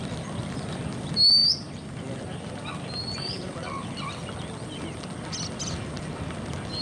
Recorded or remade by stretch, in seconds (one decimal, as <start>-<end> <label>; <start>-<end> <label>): 0.0-6.8 recorded